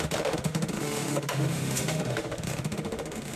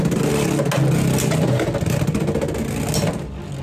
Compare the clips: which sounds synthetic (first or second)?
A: first